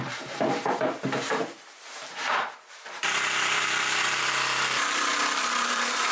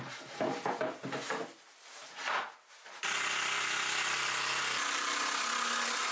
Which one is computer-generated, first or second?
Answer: first